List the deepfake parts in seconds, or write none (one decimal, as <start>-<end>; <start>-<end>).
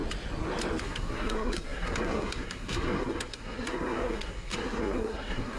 0.8-5.6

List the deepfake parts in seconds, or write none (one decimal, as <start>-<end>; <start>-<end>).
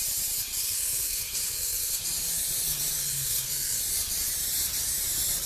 0.6-2.0; 3.0-3.8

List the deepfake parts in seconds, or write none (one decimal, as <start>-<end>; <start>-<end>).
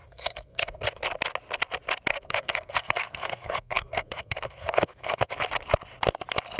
0.0-1.0; 2.1-5.3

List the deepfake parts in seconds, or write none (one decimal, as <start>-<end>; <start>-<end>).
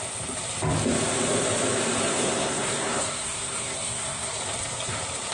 2.1-4.4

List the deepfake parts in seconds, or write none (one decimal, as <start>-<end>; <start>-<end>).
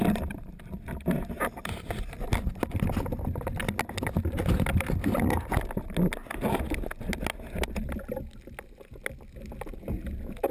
none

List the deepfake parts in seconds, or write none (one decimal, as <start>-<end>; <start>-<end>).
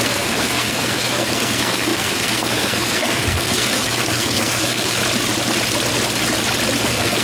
0.0-5.0; 6.8-7.2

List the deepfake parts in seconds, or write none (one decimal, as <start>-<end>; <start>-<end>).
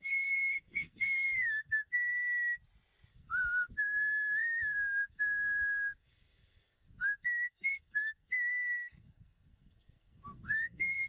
0.0-2.1; 3.1-11.1